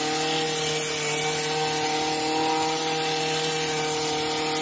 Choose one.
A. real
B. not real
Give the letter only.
A